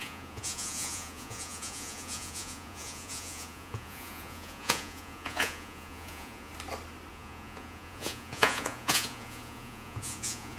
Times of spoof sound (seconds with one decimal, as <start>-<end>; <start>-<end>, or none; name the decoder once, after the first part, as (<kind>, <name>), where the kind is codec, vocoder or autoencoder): 0.0-6.5 (vocoder, Vocos); 7.1-10.6